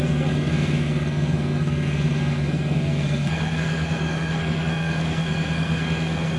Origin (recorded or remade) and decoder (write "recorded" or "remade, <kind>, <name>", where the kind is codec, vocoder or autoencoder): remade, codec, SNAC